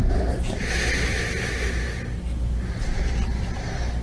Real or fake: real